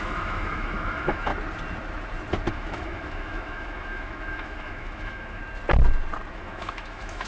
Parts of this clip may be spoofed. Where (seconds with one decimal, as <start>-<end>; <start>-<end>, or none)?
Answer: 0.0-1.3; 2.5-5.4; 6.3-7.3

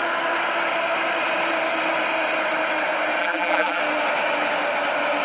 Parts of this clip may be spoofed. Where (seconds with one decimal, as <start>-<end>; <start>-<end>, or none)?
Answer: 3.2-3.8